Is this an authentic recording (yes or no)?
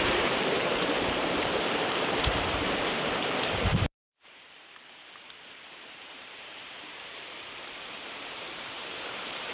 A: no